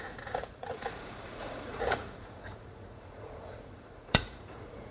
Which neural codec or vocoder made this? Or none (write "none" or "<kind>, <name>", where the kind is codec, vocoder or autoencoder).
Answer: vocoder, Vocos